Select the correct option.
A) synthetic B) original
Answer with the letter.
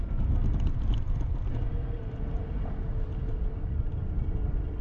B